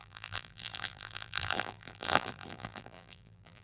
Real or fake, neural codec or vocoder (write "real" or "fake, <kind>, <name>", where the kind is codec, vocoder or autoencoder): fake, vocoder, BigVGAN v2